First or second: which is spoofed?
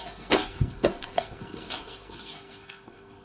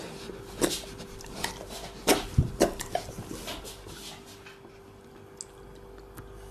first